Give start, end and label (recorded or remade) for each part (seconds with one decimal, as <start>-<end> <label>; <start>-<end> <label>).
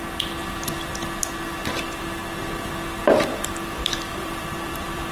0.0-3.3 recorded; 3.3-5.1 remade